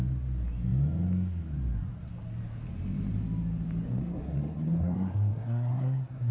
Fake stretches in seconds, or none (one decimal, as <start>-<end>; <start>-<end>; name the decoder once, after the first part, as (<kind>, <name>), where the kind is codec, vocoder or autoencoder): 4.0-6.3 (codec, SNAC)